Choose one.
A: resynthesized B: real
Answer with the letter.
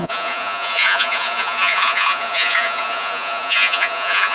A